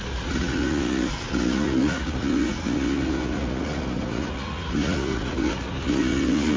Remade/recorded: remade